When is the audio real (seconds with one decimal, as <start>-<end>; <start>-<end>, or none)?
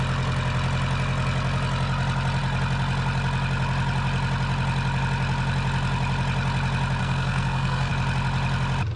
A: 0.0-7.0; 7.9-9.0